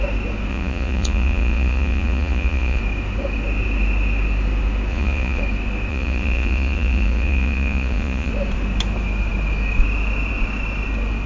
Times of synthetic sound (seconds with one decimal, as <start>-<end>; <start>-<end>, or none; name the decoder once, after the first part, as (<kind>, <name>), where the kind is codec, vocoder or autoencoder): 0.5-2.8 (vocoder, Vocos); 4.9-5.4; 5.9-8.3